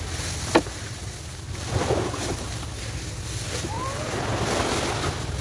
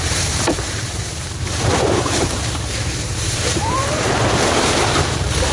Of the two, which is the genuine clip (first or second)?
first